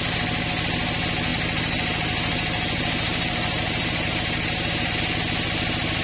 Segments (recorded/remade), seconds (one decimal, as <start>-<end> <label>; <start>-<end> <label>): 0.0-1.3 recorded; 1.3-4.9 remade; 4.9-6.0 recorded